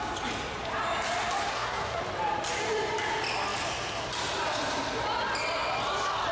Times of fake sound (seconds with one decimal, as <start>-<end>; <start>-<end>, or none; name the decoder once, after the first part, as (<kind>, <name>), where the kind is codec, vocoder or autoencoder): 1.5-2.0 (codec, SNAC)